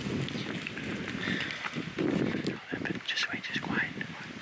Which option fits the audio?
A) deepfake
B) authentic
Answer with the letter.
B